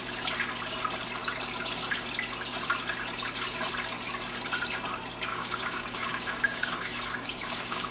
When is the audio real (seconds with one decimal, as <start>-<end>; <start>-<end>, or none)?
0.0-5.3